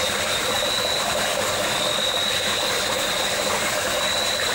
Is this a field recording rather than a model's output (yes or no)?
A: yes